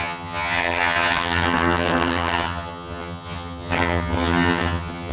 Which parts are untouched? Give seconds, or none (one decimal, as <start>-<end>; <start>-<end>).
none